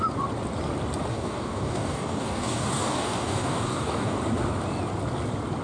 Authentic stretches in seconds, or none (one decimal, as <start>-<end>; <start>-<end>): 0.0-1.1; 4.2-5.6